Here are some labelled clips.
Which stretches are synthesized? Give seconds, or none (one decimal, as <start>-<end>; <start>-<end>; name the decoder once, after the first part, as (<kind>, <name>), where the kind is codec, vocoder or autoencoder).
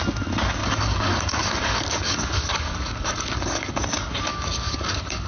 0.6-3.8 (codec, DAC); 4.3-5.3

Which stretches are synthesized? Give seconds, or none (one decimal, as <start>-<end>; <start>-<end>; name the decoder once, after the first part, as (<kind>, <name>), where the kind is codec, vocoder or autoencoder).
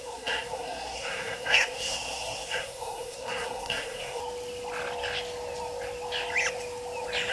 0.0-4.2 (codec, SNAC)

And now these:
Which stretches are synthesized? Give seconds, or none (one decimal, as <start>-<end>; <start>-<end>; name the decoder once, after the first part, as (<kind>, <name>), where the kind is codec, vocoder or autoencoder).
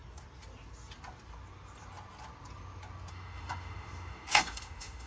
3.1-5.1 (autoencoder, DAC-VAE)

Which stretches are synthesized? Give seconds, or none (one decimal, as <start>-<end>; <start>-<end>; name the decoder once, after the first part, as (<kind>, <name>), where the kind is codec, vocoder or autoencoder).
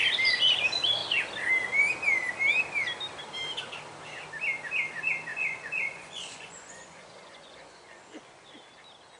5.3-8.5 (vocoder, Vocos)